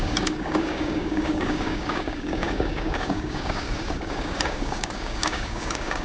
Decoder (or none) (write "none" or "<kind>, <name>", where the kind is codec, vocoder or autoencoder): codec, DAC